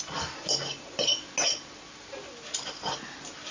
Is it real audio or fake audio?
real